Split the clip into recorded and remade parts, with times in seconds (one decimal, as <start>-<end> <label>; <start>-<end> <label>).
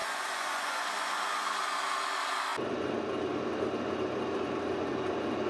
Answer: 0.0-1.8 remade; 1.8-5.5 recorded